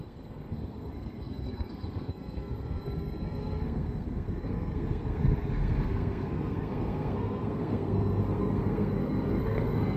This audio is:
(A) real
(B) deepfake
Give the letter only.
B